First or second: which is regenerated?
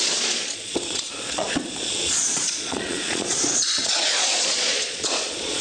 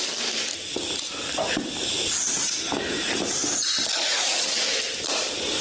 first